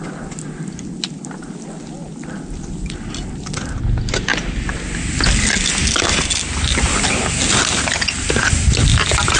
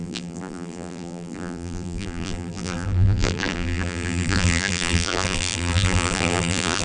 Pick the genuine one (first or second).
first